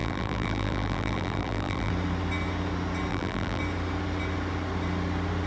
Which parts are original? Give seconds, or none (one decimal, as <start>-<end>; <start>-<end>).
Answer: 1.9-3.1; 3.6-5.5